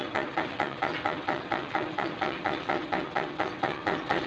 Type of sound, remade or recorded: remade